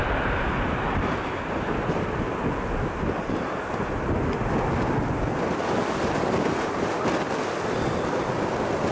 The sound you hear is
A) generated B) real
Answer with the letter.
B